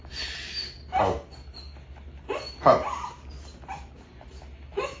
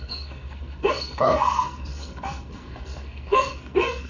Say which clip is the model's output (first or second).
second